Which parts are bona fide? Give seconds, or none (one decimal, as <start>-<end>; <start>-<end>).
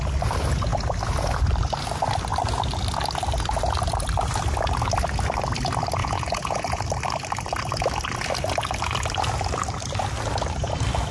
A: 0.0-6.0; 6.8-11.1